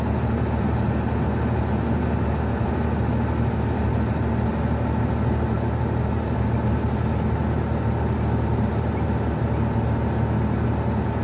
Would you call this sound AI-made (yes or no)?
no